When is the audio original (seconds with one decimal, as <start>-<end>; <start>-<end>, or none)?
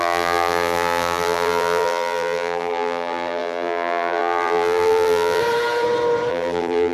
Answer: 5.4-6.3